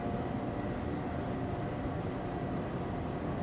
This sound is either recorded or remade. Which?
recorded